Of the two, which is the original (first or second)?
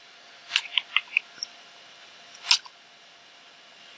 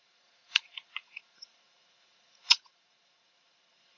first